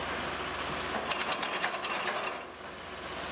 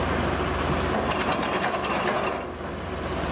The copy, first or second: second